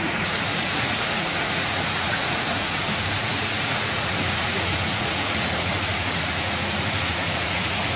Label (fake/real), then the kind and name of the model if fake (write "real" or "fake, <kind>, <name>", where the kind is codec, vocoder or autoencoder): fake, vocoder, Vocos